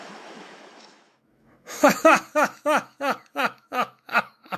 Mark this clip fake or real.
fake